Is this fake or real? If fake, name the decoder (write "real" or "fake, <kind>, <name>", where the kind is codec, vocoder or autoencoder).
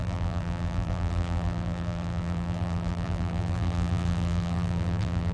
fake, vocoder, BigVGAN v2